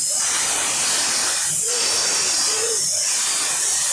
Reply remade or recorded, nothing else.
recorded